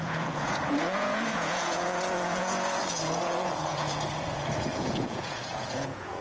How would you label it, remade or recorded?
remade